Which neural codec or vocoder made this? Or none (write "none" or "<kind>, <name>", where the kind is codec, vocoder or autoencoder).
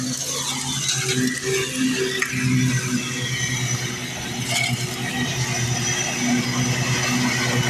none